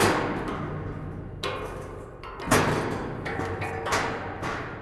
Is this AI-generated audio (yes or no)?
no